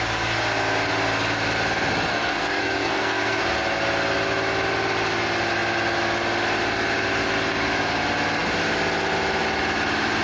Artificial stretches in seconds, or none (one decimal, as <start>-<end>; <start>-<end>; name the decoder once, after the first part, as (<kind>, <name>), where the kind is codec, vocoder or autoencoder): 2.1-3.4 (codec, SNAC)